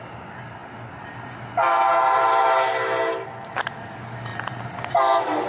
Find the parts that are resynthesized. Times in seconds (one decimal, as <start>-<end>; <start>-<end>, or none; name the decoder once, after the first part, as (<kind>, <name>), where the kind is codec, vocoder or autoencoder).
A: none